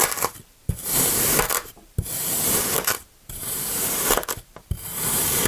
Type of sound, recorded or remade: remade